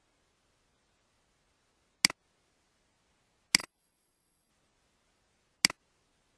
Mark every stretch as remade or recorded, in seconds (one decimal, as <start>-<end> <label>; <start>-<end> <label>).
0.0-3.6 recorded; 3.6-4.5 remade; 4.5-6.4 recorded